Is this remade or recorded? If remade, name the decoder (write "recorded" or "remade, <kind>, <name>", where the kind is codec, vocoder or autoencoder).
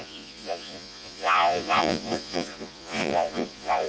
remade, vocoder, Vocos